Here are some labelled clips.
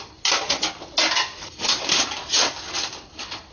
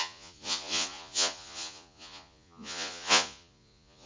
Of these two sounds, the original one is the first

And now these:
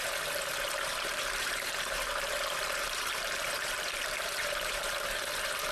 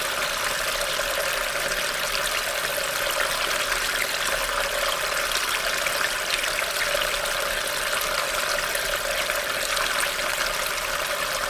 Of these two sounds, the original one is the second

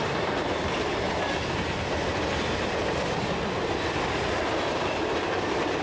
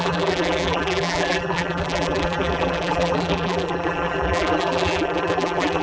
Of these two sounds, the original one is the first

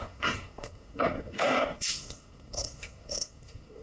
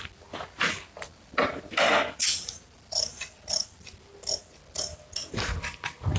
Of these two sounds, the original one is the second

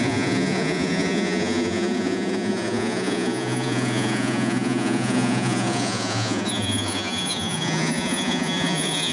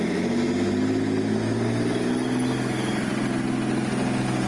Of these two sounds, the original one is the second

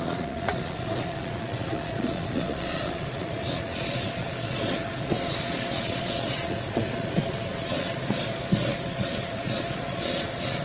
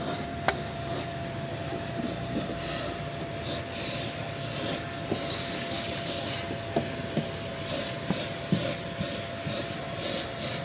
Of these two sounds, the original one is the second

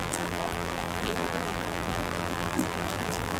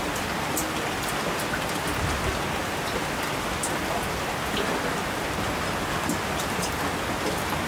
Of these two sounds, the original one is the second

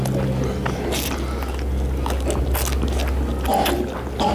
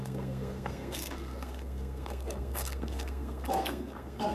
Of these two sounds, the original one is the first